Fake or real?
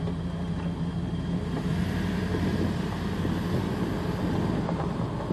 real